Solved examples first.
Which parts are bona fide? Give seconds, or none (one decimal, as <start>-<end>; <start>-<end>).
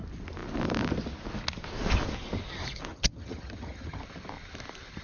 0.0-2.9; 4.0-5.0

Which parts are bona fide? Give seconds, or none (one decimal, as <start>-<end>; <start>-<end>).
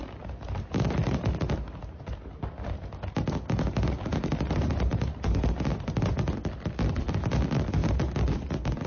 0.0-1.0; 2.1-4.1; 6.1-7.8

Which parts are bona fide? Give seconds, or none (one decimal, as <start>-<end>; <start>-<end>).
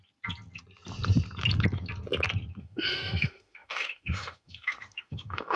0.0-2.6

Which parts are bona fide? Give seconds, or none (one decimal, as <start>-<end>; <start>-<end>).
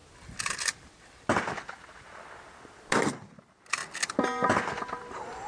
0.0-5.5